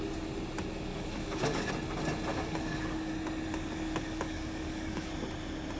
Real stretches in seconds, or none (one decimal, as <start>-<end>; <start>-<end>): 0.0-0.9; 1.7-2.3; 3.1-3.5; 5.1-5.8